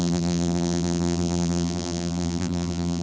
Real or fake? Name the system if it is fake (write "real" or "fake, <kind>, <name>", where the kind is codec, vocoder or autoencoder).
fake, vocoder, BigVGAN v2